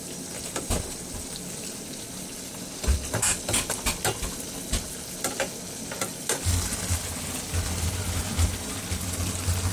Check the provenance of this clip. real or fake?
real